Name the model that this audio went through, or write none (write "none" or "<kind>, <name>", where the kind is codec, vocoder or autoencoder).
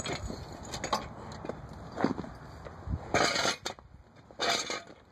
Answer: none